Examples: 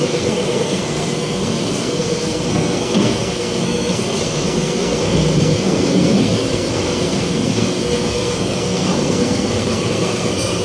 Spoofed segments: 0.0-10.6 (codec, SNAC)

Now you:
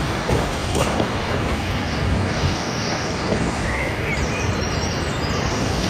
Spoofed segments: 0.0-4.1 (codec, DAC); 5.5-5.9

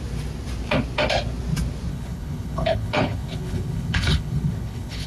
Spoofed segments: 1.9-5.1 (codec, HILCodec)